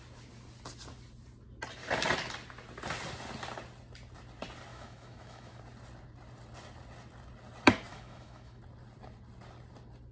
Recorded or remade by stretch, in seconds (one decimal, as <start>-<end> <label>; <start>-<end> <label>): 0.0-4.7 recorded; 4.7-5.6 remade; 5.6-7.9 recorded; 7.9-8.6 remade; 8.6-10.1 recorded